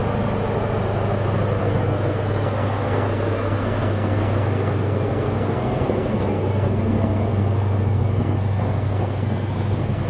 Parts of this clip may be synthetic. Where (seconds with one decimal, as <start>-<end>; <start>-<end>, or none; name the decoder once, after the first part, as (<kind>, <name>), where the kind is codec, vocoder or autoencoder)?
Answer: 1.6-10.1 (codec, SNAC)